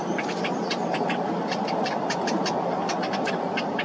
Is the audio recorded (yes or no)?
yes